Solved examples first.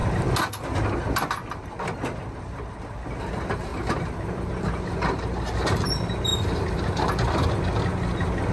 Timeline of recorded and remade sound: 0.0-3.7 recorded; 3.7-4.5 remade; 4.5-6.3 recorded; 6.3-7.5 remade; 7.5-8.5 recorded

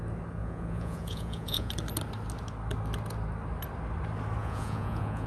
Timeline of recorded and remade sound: 0.0-0.4 recorded; 0.4-1.7 remade; 1.7-4.4 recorded; 4.4-5.3 remade

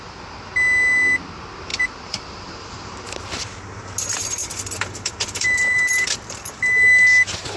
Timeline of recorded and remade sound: 0.0-1.7 recorded; 1.7-2.9 remade; 2.9-4.4 recorded; 4.4-6.6 remade; 6.6-7.6 recorded

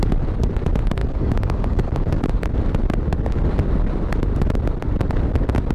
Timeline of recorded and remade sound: 0.0-1.0 recorded; 1.0-2.2 remade; 2.2-5.7 recorded

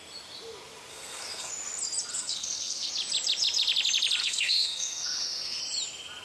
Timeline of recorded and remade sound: 0.0-0.9 recorded; 0.9-1.5 remade; 1.5-2.1 recorded; 2.1-2.9 remade; 2.9-4.2 recorded; 4.2-5.6 remade; 5.6-6.2 recorded